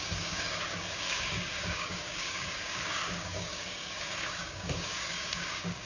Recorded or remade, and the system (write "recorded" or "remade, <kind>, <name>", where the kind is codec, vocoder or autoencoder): remade, codec, DAC